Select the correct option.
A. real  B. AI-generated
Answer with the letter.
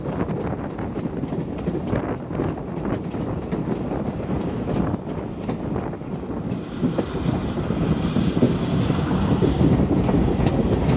A